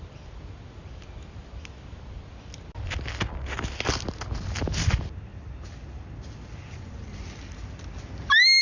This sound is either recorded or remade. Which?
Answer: recorded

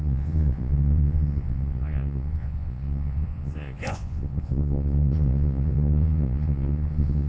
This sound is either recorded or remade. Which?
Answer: remade